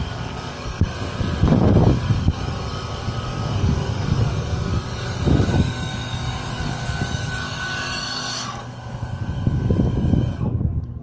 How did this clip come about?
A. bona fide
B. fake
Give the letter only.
B